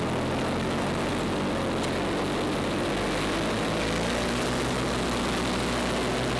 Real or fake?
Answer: real